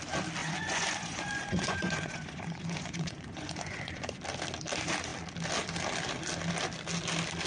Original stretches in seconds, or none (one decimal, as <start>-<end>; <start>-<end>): 0.0-0.4; 3.9-7.5